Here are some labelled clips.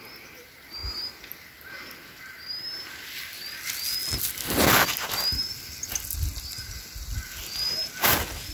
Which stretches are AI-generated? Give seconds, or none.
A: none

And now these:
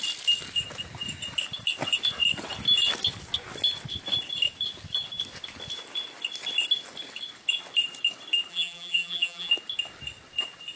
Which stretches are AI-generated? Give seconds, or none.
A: 8.5-9.5 (vocoder, BigVGAN v2)